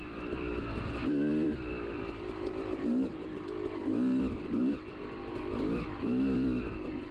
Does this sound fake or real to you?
fake